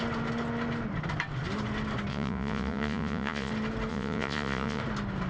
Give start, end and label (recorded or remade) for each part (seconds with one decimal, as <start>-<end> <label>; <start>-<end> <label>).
0.0-2.1 recorded; 2.1-3.5 remade; 3.5-3.9 recorded; 3.9-4.8 remade; 4.8-5.3 recorded